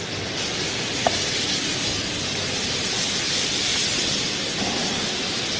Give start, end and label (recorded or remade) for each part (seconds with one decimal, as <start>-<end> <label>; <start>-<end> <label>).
0.0-1.9 remade; 1.9-3.2 recorded; 3.2-3.7 remade; 3.7-4.6 recorded; 4.6-5.6 remade